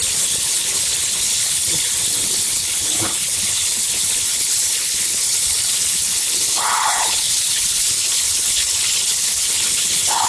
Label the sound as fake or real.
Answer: fake